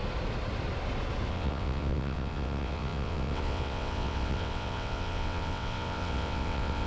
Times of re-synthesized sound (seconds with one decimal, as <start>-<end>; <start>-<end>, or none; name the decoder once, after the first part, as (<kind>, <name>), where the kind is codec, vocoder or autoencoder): 1.3-6.9 (vocoder, WaveNeXt)